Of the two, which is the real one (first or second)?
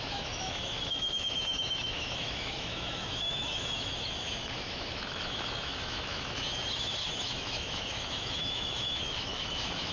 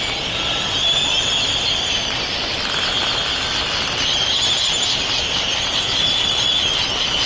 second